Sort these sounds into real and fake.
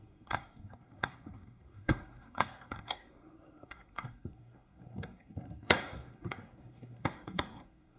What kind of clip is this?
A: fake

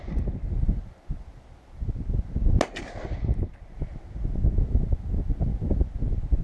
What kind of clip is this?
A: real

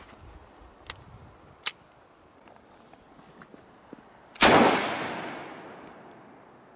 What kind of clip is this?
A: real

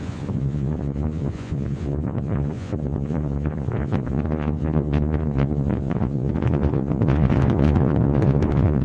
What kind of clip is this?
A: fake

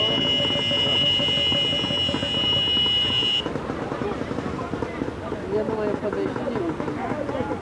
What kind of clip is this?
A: real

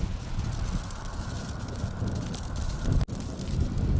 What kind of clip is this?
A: real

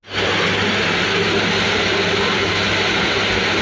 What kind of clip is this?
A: real